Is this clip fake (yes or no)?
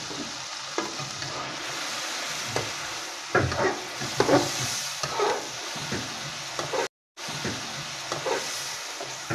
no